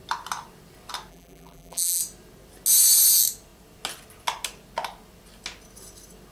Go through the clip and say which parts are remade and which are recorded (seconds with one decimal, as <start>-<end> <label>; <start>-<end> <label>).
0.0-1.1 recorded; 1.1-2.0 remade; 2.0-6.3 recorded